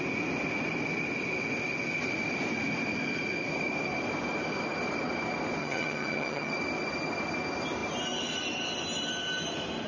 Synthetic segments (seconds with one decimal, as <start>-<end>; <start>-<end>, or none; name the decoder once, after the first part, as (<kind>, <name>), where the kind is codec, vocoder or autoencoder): 5.6-6.5 (vocoder, HiFi-GAN)

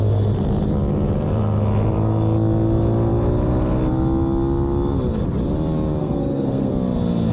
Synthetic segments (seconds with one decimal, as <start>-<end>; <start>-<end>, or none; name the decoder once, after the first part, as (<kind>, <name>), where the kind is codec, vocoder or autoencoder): 6.0-6.7 (codec, SNAC)